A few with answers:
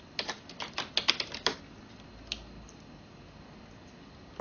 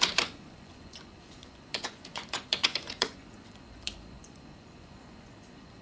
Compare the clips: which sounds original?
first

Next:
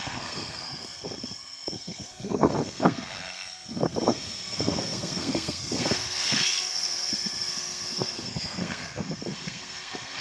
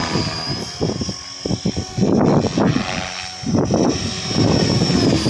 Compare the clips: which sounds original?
second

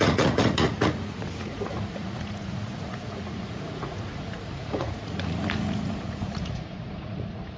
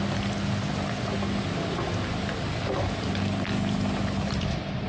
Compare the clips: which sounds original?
second